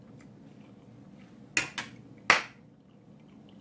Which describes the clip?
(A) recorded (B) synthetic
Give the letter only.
A